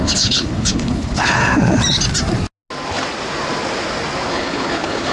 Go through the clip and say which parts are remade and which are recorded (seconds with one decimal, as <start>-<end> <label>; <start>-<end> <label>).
0.0-1.4 remade; 1.4-4.3 recorded; 4.3-5.1 remade